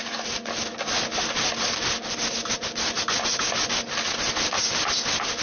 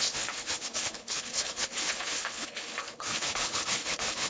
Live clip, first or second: first